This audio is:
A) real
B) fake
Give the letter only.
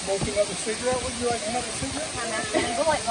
A